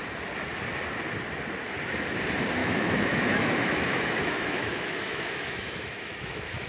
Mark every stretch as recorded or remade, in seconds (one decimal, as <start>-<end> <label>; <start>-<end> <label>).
0.0-2.6 recorded; 2.6-6.7 remade